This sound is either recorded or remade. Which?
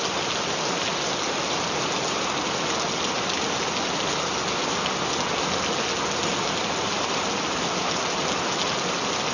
recorded